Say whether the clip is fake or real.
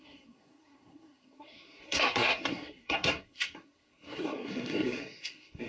fake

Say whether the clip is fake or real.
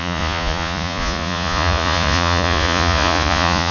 fake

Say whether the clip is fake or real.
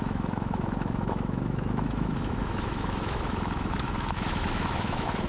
fake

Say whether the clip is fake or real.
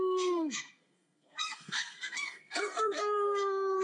fake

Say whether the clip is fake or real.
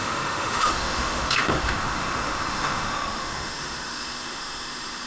fake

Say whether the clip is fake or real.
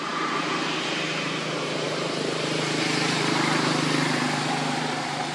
fake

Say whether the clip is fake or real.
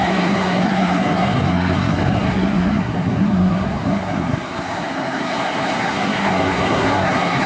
fake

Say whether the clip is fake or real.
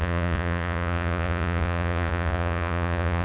fake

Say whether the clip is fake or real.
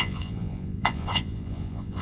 fake